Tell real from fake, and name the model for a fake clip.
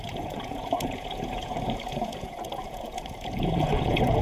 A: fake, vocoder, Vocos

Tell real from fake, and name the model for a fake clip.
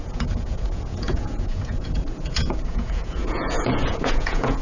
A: fake, vocoder, Vocos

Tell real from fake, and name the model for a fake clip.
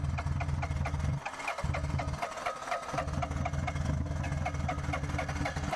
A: real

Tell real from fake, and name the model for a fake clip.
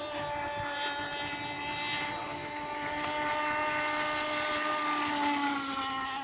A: real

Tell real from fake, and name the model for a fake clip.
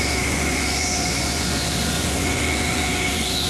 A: fake, vocoder, Vocos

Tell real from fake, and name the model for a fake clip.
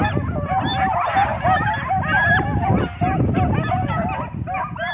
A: real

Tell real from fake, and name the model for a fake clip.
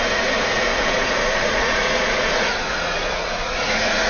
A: fake, vocoder, Vocos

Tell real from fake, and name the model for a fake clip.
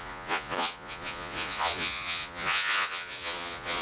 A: fake, vocoder, Vocos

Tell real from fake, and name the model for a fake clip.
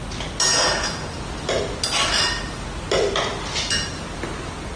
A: real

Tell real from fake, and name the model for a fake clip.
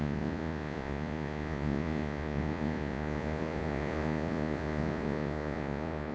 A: fake, vocoder, Vocos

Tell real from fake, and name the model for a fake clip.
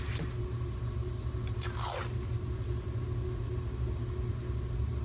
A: real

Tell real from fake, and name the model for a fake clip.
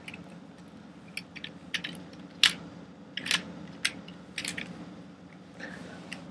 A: real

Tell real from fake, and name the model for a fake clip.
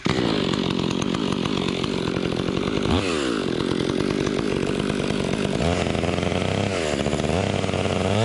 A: real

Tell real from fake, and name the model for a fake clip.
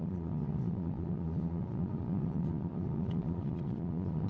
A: fake, vocoder, Vocos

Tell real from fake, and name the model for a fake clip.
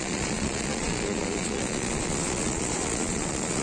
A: fake, vocoder, Vocos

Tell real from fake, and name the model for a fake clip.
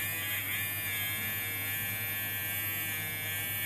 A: real